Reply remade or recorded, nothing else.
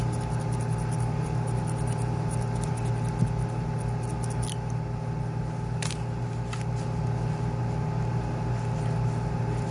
recorded